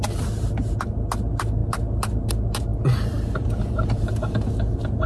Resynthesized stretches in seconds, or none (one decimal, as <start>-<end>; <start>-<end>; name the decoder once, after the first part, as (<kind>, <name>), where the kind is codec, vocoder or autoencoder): none